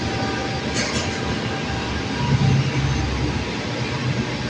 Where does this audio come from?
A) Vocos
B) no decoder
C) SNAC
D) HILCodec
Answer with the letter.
B